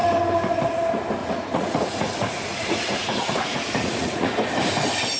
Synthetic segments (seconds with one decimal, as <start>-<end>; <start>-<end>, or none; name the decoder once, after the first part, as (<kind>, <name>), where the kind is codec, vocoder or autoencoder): 1.2-4.3 (vocoder, Vocos)